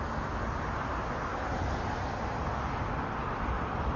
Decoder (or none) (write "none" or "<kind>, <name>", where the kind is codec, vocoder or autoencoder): none